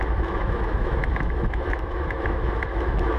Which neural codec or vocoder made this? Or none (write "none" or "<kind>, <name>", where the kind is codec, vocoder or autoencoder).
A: autoencoder, DAC-VAE